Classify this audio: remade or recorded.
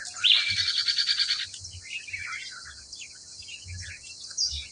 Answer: recorded